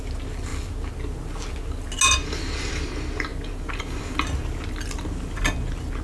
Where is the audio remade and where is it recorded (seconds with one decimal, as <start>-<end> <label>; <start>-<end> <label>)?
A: 0.0-6.0 recorded